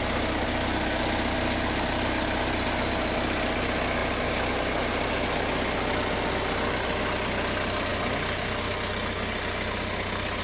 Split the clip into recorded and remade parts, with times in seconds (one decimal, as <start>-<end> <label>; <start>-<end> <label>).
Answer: 0.0-4.0 recorded; 4.0-5.1 remade; 5.1-10.4 recorded